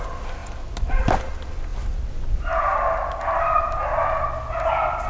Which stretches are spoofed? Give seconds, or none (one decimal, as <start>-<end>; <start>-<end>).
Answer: none